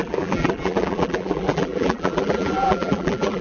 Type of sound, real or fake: fake